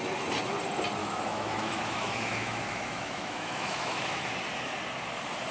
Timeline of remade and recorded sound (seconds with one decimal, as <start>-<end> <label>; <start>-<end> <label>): 0.0-1.0 recorded; 1.0-4.3 remade; 4.3-5.5 recorded